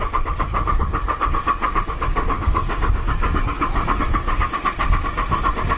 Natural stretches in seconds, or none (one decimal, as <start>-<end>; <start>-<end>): 0.0-1.7; 4.6-5.8